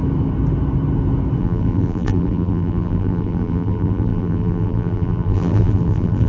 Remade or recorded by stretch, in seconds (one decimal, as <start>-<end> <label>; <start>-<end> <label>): 0.0-1.4 recorded; 1.4-6.3 remade